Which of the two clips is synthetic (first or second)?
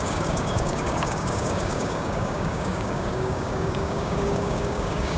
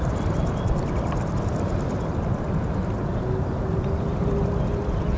first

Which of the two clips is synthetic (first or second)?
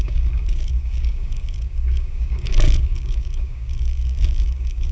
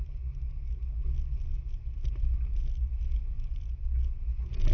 first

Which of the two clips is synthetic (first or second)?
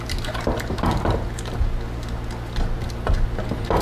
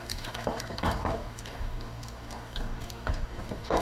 second